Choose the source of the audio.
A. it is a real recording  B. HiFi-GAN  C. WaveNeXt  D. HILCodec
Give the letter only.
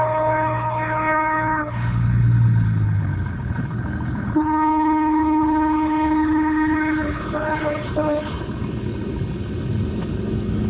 D